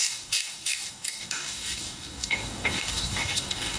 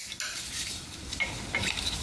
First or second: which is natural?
second